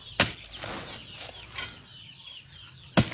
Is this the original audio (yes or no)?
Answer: yes